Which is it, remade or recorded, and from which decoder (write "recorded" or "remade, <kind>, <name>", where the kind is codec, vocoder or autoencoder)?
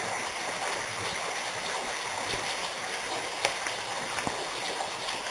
recorded